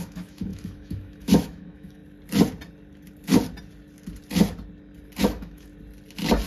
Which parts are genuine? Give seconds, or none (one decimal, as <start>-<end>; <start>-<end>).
2.0-5.2; 5.7-6.5